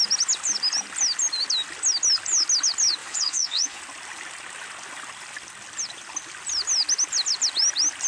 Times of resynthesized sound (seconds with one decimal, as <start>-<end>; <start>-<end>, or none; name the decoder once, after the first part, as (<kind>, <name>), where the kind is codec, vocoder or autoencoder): 3.0-3.8 (vocoder, Vocos)